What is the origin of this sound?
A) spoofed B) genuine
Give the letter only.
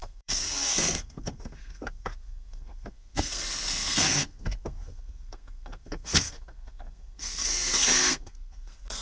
A